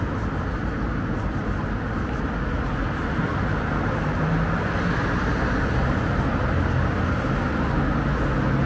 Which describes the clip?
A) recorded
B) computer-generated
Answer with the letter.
A